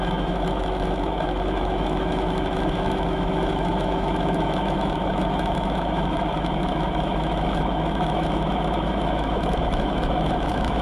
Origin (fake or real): fake